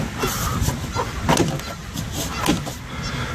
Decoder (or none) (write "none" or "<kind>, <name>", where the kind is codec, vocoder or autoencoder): none